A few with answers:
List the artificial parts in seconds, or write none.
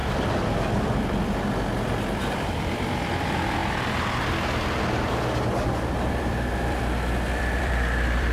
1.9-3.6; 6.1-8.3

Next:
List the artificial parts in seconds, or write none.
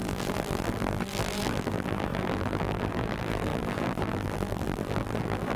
0.0-5.6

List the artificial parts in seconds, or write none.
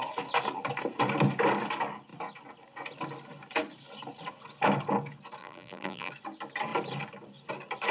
5.4-6.1